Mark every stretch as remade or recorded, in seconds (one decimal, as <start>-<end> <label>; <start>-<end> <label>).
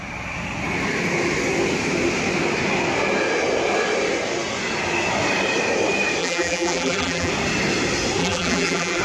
0.0-6.2 recorded; 6.2-7.3 remade; 7.3-8.2 recorded; 8.2-9.0 remade